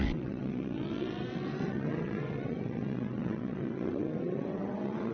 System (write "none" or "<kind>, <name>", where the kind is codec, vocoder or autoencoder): vocoder, WaveNeXt